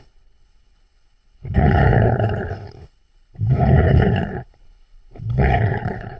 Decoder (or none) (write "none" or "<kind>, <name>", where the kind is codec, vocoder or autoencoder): codec, HILCodec